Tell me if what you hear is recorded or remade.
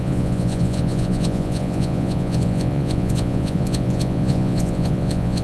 remade